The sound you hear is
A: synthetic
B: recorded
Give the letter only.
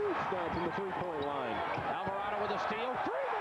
B